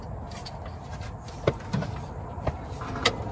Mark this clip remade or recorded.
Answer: recorded